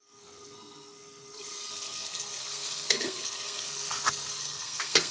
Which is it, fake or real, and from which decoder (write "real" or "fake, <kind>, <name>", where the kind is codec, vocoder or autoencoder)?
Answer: fake, codec, SNAC